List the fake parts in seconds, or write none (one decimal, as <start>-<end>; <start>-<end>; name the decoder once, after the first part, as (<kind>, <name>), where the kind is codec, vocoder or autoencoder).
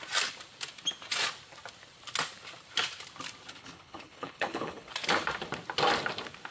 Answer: 3.5-4.9 (codec, HILCodec)